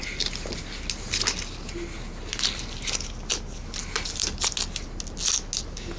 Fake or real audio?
real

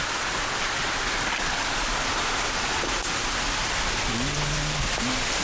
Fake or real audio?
real